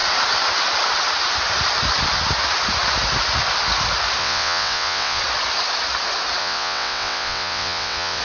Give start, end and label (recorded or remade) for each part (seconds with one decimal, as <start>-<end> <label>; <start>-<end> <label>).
0.0-4.2 recorded; 4.2-5.2 remade; 5.2-6.4 recorded; 6.4-8.2 remade